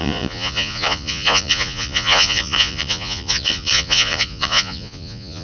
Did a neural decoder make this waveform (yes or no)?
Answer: yes